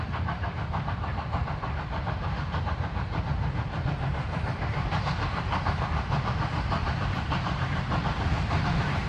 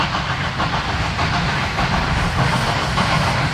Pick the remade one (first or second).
first